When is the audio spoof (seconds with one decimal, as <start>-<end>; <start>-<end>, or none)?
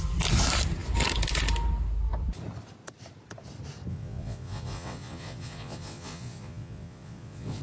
3.9-7.6